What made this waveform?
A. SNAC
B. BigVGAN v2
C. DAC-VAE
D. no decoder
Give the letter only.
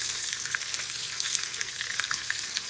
A